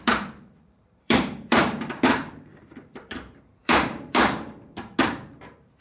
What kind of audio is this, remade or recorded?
remade